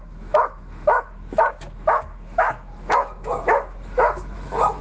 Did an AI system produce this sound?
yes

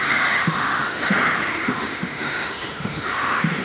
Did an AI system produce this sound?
yes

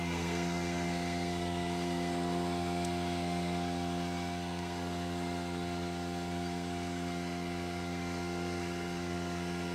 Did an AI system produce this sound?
yes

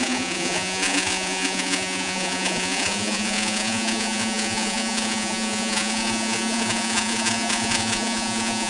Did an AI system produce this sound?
yes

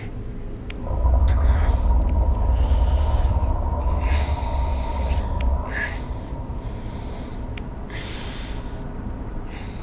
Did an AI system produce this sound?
no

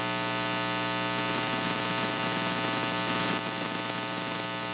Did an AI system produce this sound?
no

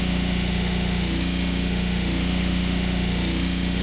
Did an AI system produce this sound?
yes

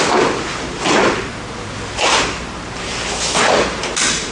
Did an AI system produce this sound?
no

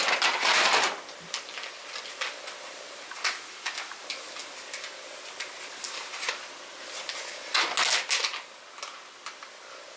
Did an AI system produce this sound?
no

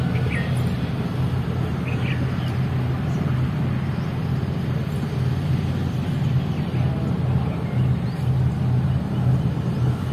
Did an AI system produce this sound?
no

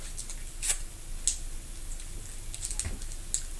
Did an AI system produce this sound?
no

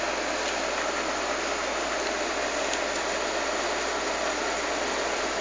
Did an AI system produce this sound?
no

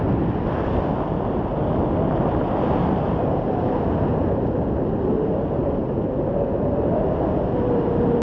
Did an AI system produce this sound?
no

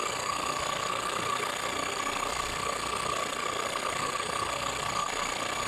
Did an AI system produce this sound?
yes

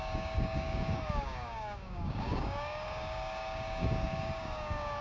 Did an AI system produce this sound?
yes